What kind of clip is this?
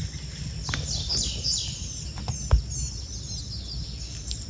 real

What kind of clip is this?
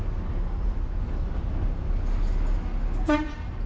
real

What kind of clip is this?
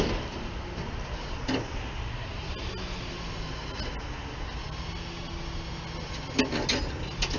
real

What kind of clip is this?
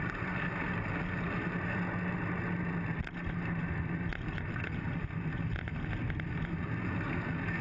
real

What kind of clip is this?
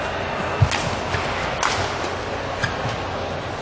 real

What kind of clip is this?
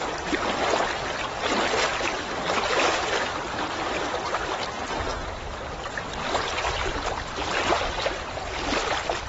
real